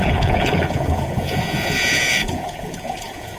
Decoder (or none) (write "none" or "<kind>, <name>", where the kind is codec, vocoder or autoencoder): vocoder, Vocos